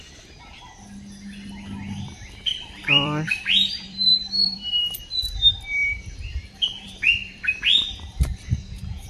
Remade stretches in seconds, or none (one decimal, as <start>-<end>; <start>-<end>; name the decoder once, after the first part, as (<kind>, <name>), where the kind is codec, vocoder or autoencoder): 2.5-7.7 (vocoder, BigVGAN v2)